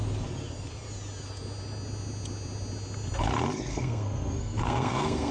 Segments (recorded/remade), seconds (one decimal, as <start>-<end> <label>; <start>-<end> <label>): 0.0-3.7 recorded; 3.7-5.3 remade